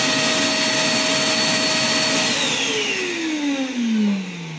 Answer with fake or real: real